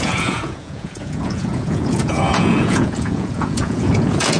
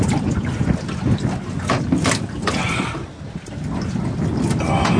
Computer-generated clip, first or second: first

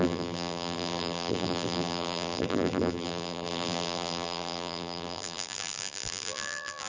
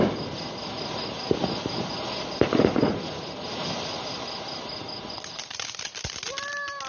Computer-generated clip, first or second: first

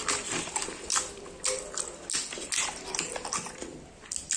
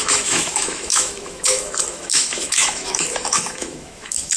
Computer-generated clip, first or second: second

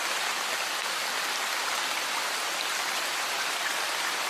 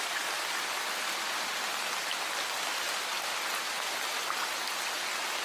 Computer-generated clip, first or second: first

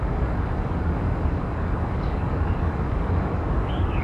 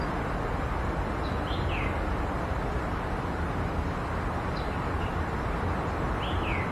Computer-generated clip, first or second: first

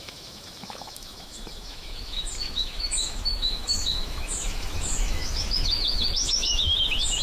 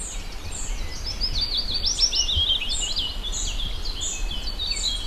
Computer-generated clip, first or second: first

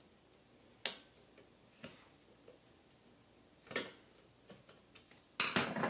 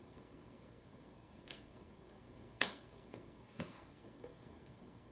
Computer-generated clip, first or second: second